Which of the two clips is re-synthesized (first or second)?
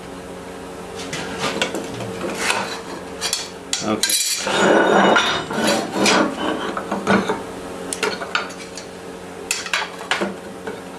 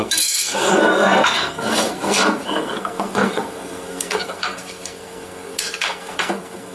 second